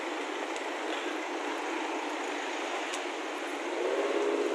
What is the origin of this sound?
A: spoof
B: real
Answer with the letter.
B